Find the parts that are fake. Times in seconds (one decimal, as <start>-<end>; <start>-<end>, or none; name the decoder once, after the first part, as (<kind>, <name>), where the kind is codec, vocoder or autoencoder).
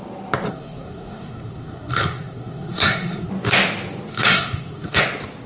0.5-3.3 (codec, SNAC); 4.1-5.0